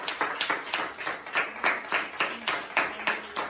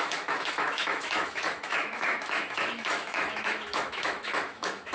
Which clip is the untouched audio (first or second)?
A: first